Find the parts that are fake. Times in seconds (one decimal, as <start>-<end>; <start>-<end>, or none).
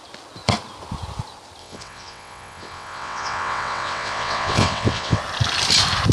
1.6-5.2